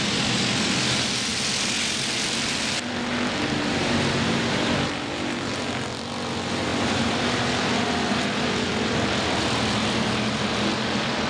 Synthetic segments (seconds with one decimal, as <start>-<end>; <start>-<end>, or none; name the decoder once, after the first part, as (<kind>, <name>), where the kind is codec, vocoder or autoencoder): none